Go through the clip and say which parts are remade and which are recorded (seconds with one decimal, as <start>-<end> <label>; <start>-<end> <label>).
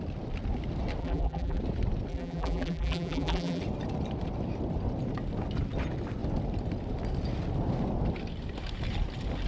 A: 0.0-1.0 recorded; 1.0-1.6 remade; 1.6-2.1 recorded; 2.1-3.6 remade; 3.6-9.5 recorded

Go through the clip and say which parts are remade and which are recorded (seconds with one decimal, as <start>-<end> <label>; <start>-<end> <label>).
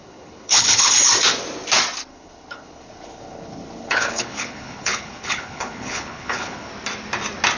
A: 0.0-0.9 remade; 0.9-2.1 recorded; 2.1-6.7 remade; 6.7-7.6 recorded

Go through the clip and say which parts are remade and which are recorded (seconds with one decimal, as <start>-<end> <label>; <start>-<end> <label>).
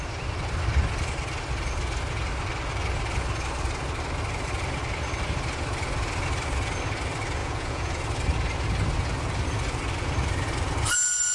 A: 0.0-7.4 recorded; 7.4-8.0 remade; 8.0-11.3 recorded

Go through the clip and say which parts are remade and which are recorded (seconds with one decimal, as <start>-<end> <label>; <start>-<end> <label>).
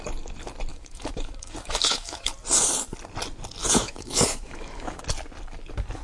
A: 0.0-0.7 recorded; 0.7-2.3 remade; 2.3-3.6 recorded; 3.6-5.0 remade; 5.0-6.0 recorded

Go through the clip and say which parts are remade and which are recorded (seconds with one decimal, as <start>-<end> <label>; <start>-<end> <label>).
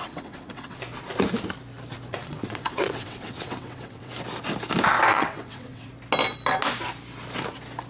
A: 0.0-0.8 remade; 0.8-2.1 recorded; 2.1-4.1 remade; 4.1-5.1 recorded; 5.1-5.9 remade; 5.9-7.9 recorded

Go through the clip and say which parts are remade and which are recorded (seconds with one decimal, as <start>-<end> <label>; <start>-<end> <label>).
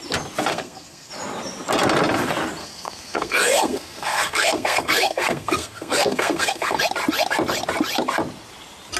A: 0.0-0.5 recorded; 0.5-1.1 remade; 1.1-2.6 recorded; 2.6-6.8 remade; 6.8-9.0 recorded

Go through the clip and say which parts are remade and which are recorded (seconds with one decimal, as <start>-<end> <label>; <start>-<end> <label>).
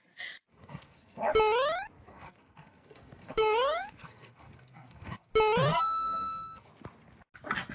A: 0.0-0.5 recorded; 0.5-1.3 remade; 1.3-2.1 recorded; 2.1-5.3 remade; 5.3-5.7 recorded; 5.7-6.7 remade; 6.7-7.7 recorded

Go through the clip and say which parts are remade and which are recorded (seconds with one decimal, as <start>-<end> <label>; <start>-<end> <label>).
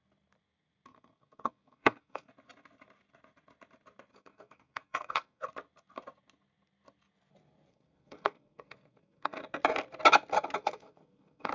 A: 0.0-0.9 recorded; 0.9-2.3 remade; 2.3-4.1 recorded; 4.1-5.5 remade; 5.5-7.7 recorded; 7.7-9.4 remade; 9.4-10.6 recorded; 10.6-11.5 remade